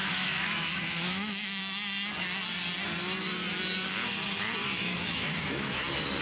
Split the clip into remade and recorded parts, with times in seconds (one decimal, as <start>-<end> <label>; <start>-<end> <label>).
0.0-1.6 remade; 1.6-4.6 recorded; 4.6-5.8 remade; 5.8-6.2 recorded